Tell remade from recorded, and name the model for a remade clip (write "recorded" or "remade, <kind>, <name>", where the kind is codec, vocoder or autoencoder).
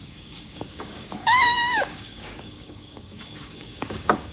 remade, codec, DAC